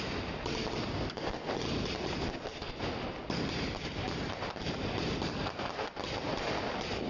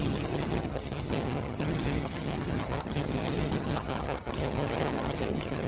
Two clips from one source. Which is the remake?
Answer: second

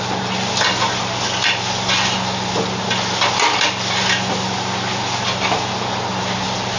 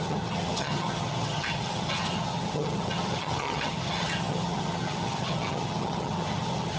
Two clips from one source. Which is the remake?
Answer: second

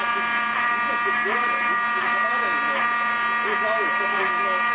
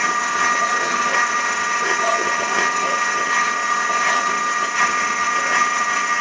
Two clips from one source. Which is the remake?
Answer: second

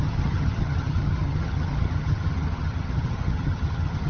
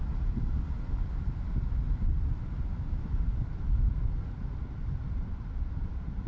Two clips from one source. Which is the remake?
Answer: first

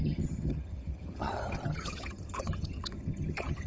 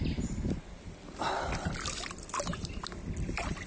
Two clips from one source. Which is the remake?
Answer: first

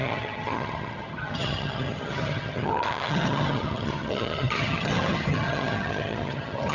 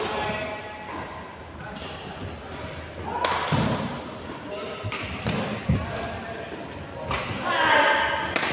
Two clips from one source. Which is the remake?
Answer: first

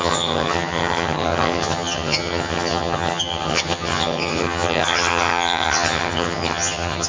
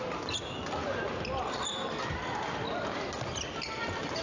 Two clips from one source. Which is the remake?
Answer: first